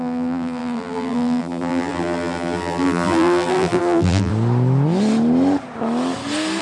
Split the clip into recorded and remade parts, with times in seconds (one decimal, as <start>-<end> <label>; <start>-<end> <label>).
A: 0.0-4.3 remade; 4.3-6.6 recorded